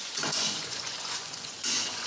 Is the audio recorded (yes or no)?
no